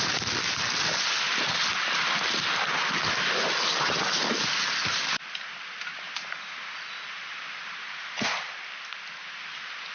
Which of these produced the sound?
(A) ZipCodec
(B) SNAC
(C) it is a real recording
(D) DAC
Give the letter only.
C